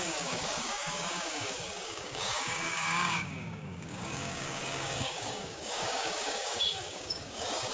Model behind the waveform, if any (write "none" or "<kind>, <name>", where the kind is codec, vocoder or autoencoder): codec, DAC